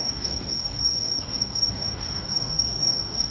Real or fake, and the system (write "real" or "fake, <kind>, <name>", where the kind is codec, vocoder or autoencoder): fake, codec, DAC